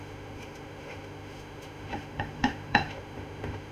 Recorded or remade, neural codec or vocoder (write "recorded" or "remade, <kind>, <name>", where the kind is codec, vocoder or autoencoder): remade, autoencoder, DAC-VAE